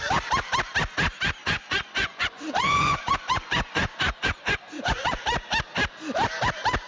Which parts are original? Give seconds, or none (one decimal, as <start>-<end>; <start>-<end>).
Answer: 0.0-1.4; 5.2-6.9